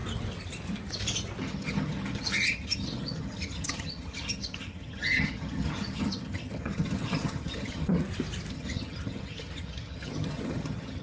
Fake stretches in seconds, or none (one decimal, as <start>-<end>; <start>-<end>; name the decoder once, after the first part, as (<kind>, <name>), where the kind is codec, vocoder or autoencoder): 1.4-8.0 (vocoder, HiFi-GAN); 8.5-11.0